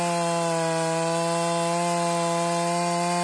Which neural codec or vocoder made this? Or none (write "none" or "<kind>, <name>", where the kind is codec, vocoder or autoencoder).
none